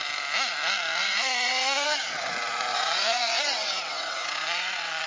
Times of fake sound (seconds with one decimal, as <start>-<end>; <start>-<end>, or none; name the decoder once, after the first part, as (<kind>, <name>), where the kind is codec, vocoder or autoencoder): 1.0-2.3 (vocoder, WaveNeXt); 2.7-5.1